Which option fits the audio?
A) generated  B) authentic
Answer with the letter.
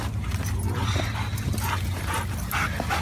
B